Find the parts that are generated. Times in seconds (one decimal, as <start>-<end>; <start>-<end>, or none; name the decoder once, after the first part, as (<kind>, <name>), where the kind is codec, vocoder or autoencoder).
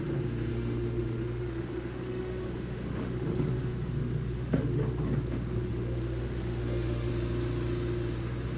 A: 0.5-4.8 (autoencoder, DAC-VAE); 5.7-7.1